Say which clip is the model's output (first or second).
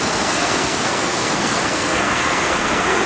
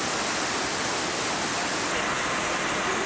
first